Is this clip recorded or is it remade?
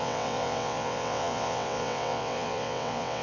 remade